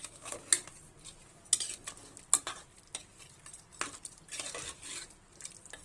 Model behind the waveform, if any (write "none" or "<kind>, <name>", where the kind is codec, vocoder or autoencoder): none